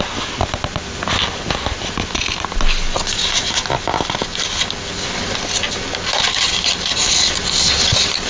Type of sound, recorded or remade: recorded